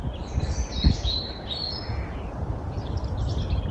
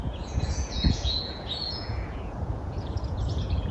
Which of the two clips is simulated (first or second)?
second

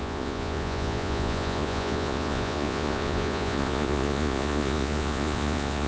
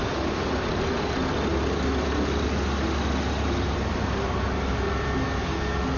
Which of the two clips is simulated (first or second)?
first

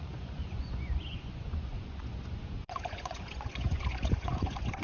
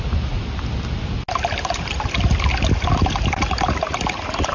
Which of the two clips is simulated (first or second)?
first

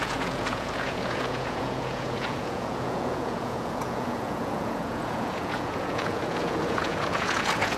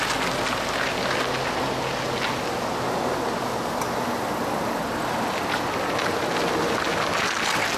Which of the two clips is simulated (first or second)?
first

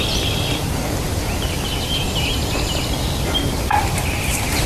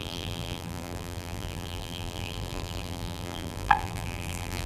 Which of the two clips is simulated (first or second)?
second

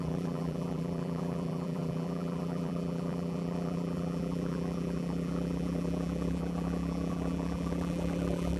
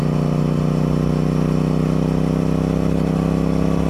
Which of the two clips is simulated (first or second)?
first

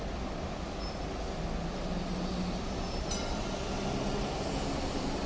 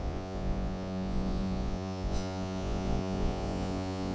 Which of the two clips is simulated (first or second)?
second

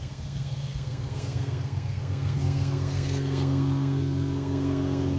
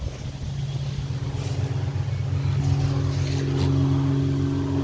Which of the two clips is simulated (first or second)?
first